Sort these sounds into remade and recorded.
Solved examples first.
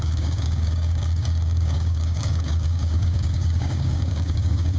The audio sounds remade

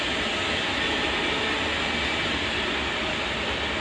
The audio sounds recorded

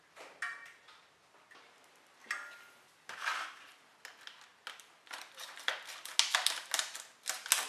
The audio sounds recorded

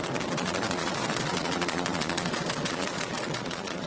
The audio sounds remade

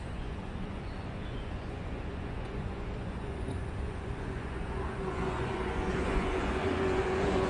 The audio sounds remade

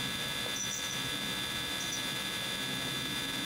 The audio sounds remade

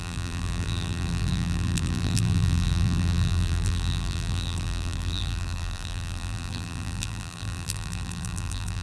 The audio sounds remade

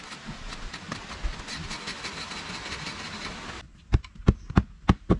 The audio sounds recorded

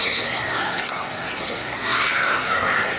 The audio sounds remade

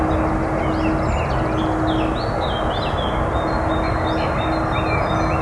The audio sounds recorded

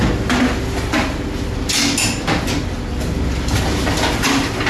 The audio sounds recorded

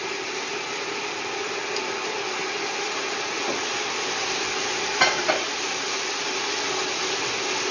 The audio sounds recorded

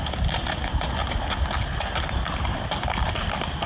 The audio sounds recorded